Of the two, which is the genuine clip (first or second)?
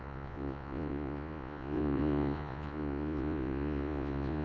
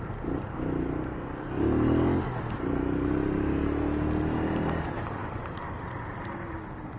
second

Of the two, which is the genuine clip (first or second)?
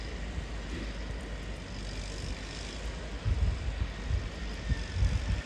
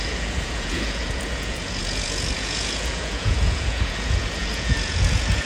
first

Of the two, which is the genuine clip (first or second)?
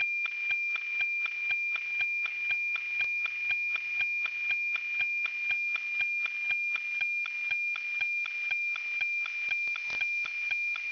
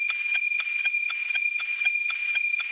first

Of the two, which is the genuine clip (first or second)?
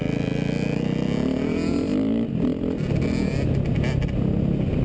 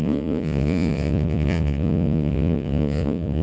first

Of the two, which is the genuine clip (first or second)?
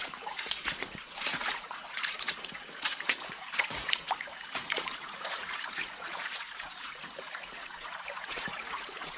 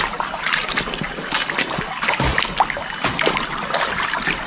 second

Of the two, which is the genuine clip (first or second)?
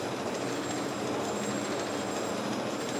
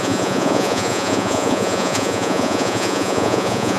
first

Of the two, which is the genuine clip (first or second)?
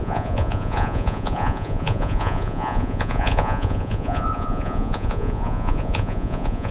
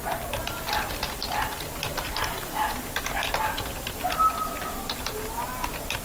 second